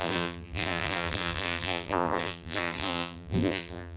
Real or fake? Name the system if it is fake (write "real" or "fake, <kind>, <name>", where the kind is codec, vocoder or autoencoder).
fake, vocoder, BigVGAN v2